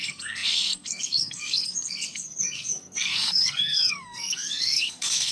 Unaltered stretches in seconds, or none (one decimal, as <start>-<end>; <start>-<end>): none

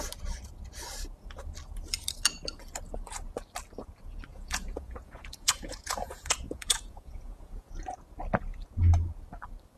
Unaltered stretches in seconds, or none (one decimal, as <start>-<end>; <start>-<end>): 0.0-4.3; 7.7-9.8

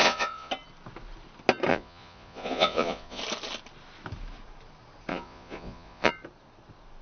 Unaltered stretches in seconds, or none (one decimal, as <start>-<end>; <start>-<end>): 0.5-1.7; 3.2-5.1; 6.1-7.0

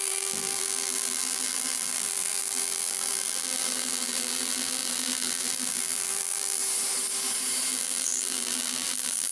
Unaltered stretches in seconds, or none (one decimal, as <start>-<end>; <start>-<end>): 6.6-7.7

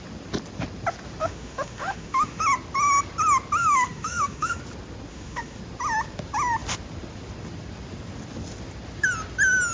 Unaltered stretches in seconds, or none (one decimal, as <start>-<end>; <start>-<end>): 0.0-1.2; 2.4-3.6; 4.6-5.1; 5.6-9.7